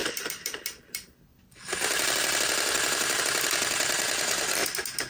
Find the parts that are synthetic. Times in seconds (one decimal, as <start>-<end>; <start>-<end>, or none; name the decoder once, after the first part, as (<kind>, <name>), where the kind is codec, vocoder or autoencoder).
0.0-0.8 (vocoder, BigVGAN v2); 1.3-3.2